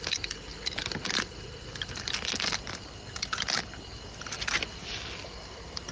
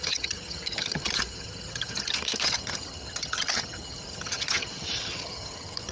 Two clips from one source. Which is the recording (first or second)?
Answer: first